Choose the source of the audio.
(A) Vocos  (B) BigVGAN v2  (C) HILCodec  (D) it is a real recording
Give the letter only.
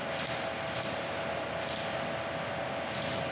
D